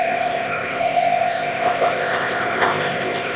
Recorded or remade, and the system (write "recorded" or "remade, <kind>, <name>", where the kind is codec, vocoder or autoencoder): remade, codec, ZipCodec